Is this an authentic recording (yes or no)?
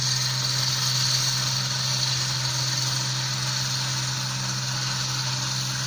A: yes